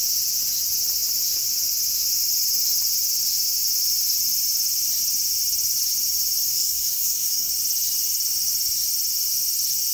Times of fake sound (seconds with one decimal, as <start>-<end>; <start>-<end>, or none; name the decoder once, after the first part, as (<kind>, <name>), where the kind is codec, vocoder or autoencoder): 6.5-7.5 (codec, DAC)